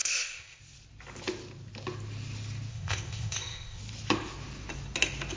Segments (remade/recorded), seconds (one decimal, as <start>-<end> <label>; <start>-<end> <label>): 0.0-0.6 remade; 0.6-2.7 recorded; 2.7-3.8 remade; 3.8-5.4 recorded